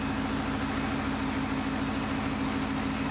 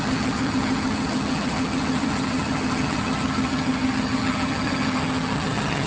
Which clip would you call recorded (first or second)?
first